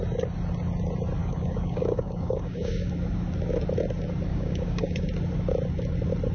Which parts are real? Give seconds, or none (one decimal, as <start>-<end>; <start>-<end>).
0.0-1.2; 2.9-4.3; 5.1-6.3